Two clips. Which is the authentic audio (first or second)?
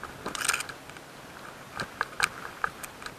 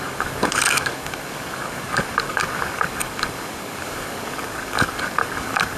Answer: first